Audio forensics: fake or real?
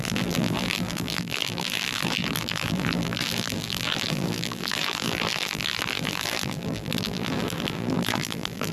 fake